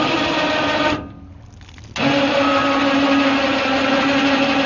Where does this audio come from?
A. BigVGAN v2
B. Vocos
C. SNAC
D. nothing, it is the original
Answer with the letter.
D